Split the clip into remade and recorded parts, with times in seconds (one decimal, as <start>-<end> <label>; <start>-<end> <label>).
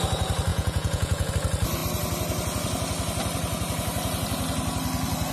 0.0-0.5 recorded; 0.5-1.3 remade; 1.3-5.3 recorded